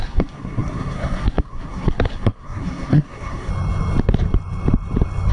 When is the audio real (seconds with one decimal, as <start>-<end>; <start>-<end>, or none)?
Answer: 3.5-5.3